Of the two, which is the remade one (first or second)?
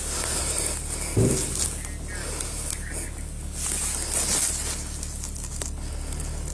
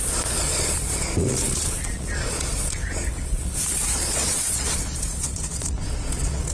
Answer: second